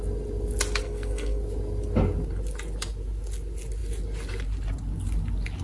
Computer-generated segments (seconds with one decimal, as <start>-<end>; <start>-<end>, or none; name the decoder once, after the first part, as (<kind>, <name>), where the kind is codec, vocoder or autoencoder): 0.8-1.4 (codec, SNAC)